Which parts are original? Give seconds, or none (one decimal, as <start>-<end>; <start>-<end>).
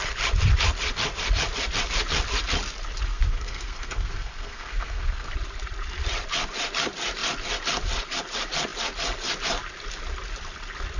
0.0-3.1; 5.3-11.0